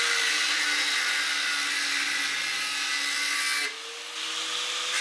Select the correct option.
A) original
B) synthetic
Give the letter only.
A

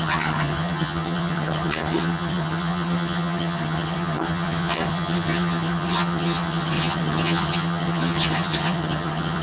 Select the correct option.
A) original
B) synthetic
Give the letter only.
B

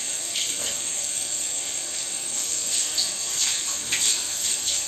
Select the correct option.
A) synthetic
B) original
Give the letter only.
A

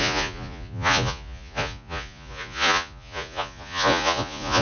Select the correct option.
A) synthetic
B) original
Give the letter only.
A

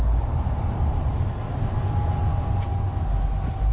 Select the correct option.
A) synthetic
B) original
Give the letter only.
B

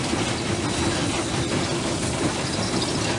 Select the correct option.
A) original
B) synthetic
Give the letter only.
A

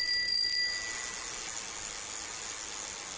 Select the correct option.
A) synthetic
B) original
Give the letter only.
B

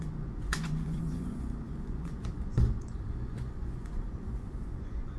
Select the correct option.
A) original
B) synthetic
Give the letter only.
B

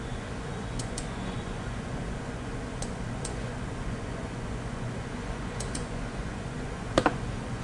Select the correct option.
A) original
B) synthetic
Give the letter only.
B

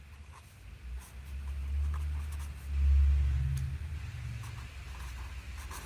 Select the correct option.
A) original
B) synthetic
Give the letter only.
A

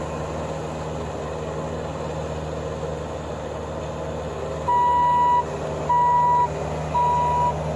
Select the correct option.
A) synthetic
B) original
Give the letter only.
B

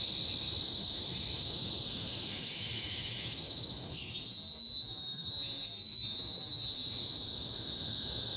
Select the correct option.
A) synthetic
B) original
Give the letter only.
A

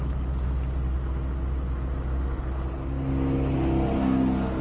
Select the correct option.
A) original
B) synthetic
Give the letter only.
A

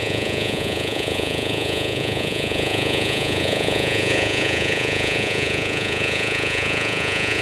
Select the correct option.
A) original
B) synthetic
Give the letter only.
B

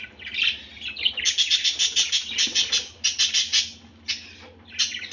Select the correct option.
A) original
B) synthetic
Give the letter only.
A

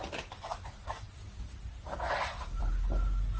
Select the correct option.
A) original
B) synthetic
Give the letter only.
A